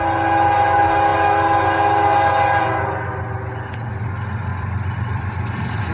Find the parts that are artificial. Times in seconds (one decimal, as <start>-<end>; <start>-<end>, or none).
4.5-5.9